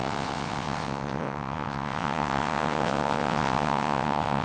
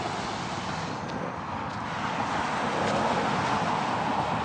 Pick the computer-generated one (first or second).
first